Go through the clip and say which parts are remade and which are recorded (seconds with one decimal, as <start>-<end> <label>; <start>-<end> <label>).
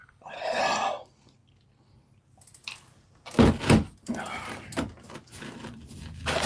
0.0-0.6 remade; 0.6-6.5 recorded